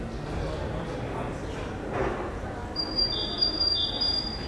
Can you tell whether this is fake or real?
real